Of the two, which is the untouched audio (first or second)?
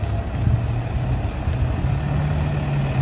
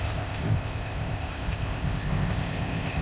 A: first